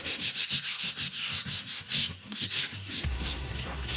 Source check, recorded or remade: remade